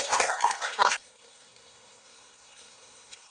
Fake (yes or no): yes